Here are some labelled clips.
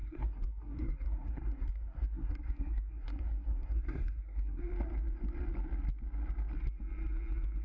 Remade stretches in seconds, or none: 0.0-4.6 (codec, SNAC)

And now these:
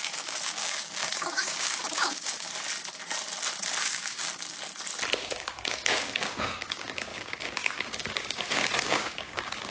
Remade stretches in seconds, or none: 0.0-2.5 (codec, DAC); 3.8-4.3; 5.2-9.7

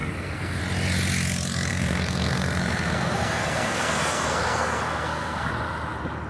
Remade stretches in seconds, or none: 0.0-0.6 (codec, SNAC); 1.7-5.5

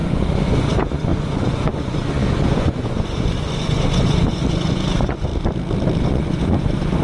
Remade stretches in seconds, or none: 0.0-5.3 (vocoder, Vocos); 6.0-7.0

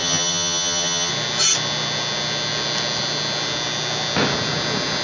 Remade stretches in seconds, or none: 0.0-1.1 (vocoder, HiFi-GAN)